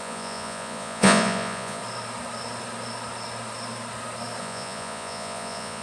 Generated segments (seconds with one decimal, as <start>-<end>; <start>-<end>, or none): 0.0-1.8; 4.4-5.8